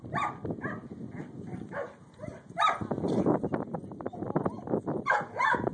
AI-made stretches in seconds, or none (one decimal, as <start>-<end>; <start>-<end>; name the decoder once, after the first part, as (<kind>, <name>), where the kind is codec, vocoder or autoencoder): none